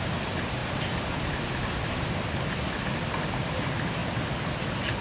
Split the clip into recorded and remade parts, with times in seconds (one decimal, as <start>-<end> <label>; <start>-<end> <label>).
0.0-5.0 recorded